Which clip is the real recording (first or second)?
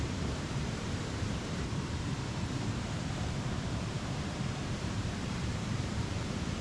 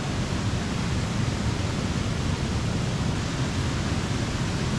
second